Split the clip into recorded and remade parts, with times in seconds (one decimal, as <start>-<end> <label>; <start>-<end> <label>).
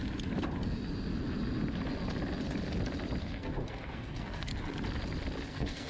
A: 0.0-3.2 recorded; 3.2-4.5 remade; 4.5-5.5 recorded; 5.5-5.9 remade